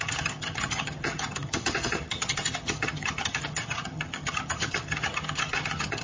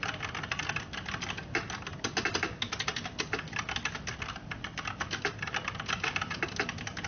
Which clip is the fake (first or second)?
first